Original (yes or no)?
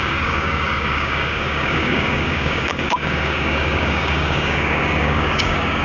no